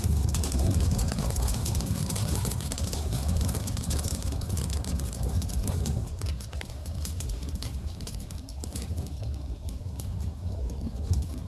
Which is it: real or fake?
fake